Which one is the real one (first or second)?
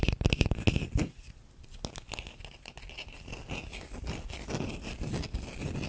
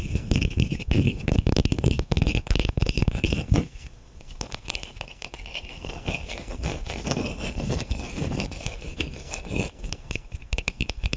first